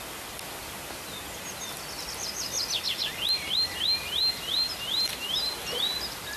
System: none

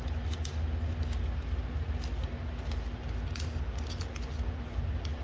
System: none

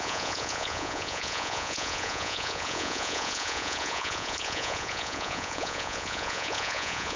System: vocoder, Vocos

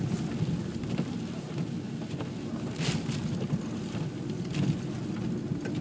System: none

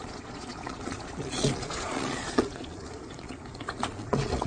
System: vocoder, Vocos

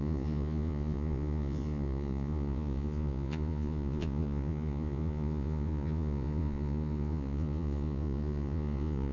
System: vocoder, Vocos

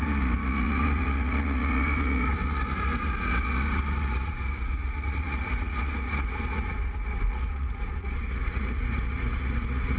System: vocoder, Vocos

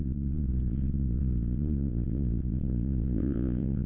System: vocoder, Vocos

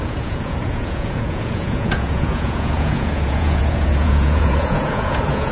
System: vocoder, Vocos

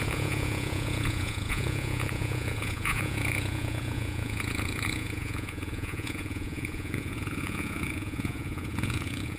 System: vocoder, Vocos